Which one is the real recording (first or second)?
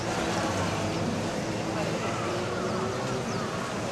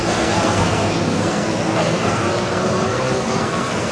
first